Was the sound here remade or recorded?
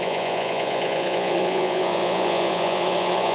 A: remade